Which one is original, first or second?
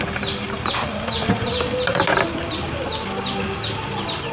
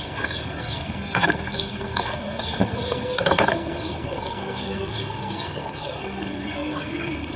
first